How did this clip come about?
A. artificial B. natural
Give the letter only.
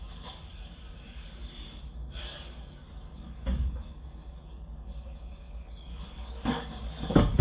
A